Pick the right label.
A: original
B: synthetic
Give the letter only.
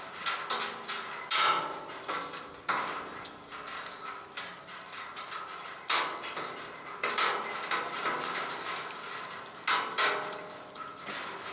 A